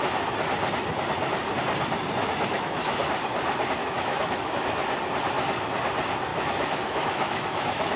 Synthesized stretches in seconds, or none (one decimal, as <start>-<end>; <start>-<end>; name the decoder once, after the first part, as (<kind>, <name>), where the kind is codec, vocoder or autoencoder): 2.2-3.0 (autoencoder, DAC-VAE); 3.8-4.5; 6.3-8.0

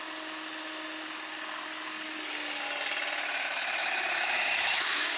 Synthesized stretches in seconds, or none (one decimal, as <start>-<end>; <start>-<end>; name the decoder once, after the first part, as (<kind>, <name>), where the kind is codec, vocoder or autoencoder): 3.8-5.2 (autoencoder, DAC-VAE)

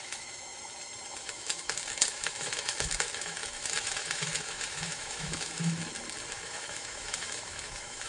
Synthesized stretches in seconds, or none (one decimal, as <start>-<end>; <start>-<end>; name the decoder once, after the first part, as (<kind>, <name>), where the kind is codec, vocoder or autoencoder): 0.0-0.5 (autoencoder, DAC-VAE); 1.1-5.8; 6.3-8.1

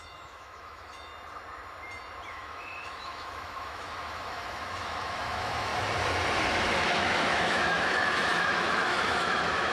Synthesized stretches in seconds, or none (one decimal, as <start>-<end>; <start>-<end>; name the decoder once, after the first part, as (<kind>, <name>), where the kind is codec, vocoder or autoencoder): 0.0-1.1 (autoencoder, DAC-VAE); 2.3-5.7; 6.8-9.7

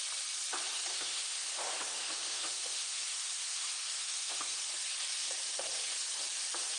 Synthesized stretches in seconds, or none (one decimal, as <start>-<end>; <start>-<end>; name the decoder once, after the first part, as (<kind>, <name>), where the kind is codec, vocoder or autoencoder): 0.9-4.7 (autoencoder, DAC-VAE)

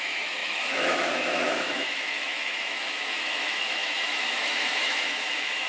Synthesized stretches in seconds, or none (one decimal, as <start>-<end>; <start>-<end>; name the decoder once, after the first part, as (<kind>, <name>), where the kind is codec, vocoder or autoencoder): 0.0-5.7 (autoencoder, DAC-VAE)